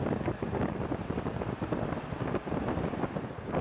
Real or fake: real